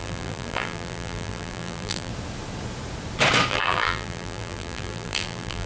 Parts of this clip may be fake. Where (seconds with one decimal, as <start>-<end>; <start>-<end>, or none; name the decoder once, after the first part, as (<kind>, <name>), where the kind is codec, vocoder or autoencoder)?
0.0-2.1 (vocoder, BigVGAN v2); 3.5-5.7